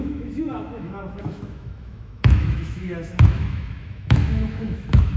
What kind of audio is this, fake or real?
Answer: fake